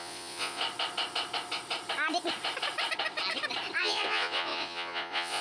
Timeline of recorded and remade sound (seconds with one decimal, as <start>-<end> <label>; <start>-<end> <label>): 0.0-0.6 remade; 0.6-3.8 recorded; 3.8-5.4 remade